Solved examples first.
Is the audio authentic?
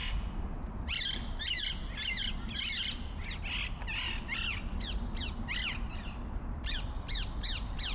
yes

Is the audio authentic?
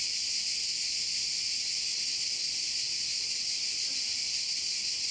yes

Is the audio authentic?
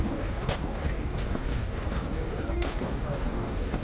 no